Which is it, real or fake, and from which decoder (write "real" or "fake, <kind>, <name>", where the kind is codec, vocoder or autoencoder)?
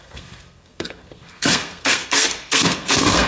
fake, codec, SNAC